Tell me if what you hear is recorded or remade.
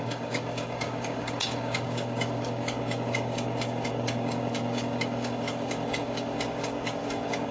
remade